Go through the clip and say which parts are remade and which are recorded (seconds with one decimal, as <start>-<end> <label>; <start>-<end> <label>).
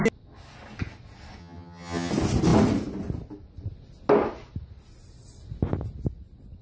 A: 0.0-1.4 recorded; 1.4-2.1 remade; 2.1-6.6 recorded